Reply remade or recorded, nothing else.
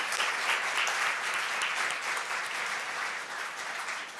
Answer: recorded